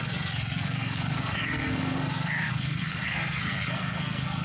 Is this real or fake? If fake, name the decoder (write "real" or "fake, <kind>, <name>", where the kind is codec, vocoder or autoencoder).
fake, codec, SNAC